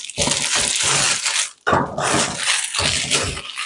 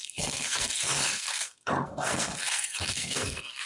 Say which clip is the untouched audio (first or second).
first